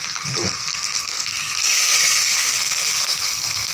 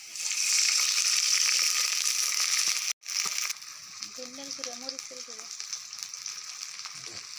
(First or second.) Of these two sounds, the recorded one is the second